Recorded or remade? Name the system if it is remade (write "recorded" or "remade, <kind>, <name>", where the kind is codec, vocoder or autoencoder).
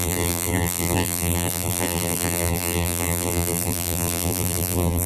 remade, vocoder, BigVGAN v2